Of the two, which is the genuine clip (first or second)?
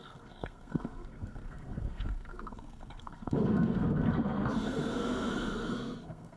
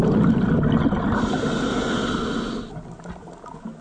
second